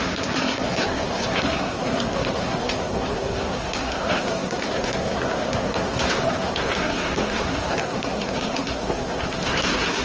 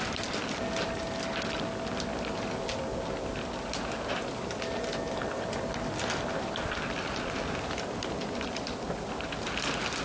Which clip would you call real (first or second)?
second